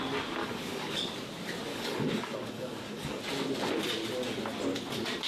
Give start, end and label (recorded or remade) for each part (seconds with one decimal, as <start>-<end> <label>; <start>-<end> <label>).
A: 0.0-0.4 recorded; 0.4-1.0 remade; 1.0-1.7 recorded; 1.7-3.2 remade; 3.2-5.3 recorded